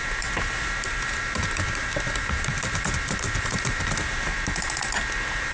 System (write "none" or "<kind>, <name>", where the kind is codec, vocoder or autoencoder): vocoder, BigVGAN v2